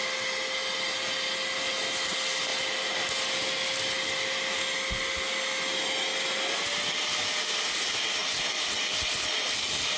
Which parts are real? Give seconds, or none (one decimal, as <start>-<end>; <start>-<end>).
0.0-10.0